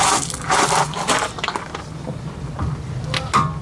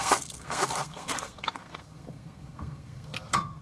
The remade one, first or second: second